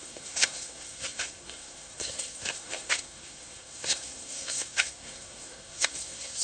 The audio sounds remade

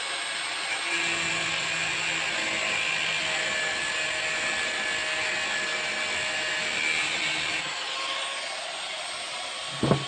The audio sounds recorded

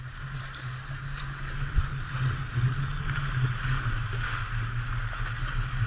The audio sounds recorded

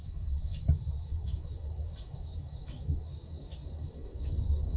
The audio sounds remade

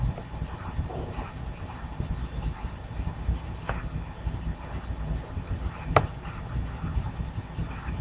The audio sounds recorded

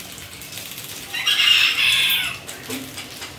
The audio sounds remade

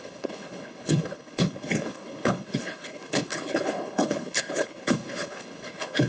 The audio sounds remade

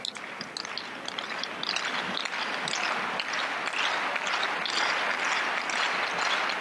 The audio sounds recorded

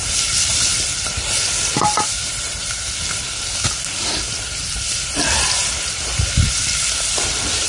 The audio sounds recorded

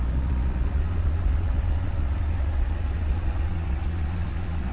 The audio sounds remade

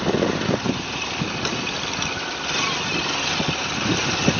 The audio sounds recorded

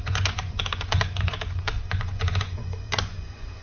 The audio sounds remade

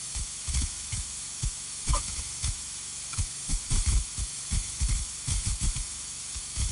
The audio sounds remade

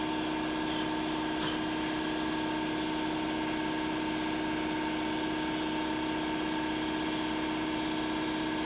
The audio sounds recorded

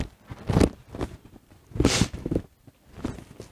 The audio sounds recorded